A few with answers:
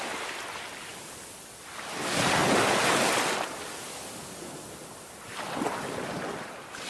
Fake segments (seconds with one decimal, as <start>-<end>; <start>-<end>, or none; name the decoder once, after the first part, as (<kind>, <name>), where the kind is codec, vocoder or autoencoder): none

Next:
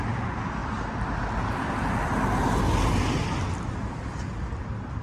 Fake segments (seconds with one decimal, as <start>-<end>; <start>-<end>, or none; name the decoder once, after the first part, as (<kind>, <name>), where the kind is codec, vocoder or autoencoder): none

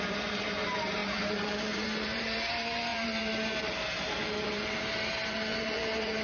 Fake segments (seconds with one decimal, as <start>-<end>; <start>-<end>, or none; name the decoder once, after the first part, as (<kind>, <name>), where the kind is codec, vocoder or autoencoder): 0.0-6.2 (vocoder, BigVGAN v2)

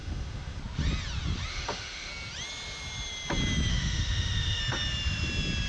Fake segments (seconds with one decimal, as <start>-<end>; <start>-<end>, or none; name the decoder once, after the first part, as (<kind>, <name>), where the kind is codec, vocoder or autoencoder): 0.0-0.6 (autoencoder, DAC-VAE); 1.5-2.1; 3.7-4.6

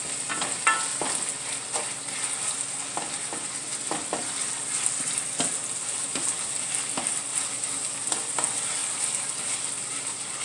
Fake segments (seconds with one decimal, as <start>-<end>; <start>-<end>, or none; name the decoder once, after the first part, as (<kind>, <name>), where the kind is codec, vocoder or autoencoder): none

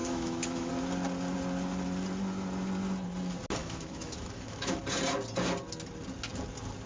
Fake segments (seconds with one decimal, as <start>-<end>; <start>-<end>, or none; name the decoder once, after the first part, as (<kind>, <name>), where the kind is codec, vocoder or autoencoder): 0.0-0.7 (autoencoder, DAC-VAE); 3.6-4.8

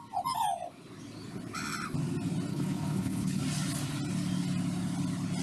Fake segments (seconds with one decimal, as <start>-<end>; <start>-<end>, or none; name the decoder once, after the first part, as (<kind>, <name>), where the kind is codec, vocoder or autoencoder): 2.5-3.4 (codec, HILCodec)